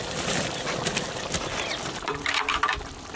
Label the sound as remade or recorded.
remade